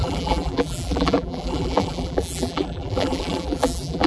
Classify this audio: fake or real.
fake